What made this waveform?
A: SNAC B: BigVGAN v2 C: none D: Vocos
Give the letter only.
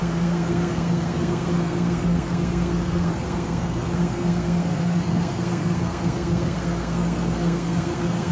A